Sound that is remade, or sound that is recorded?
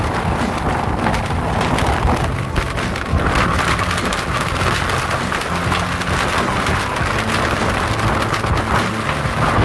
recorded